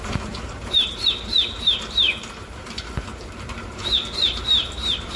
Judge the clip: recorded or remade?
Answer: remade